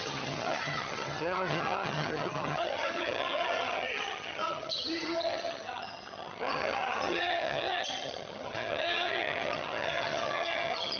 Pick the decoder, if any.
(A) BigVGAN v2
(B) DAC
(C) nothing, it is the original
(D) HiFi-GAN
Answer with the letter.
D